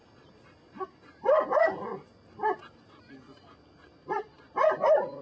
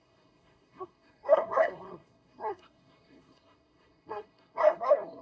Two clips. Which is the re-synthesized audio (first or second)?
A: second